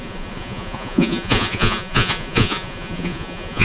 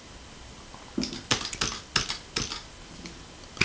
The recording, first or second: second